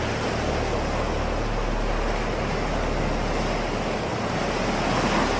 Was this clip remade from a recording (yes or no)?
no